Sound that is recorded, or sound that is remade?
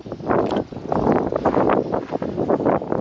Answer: recorded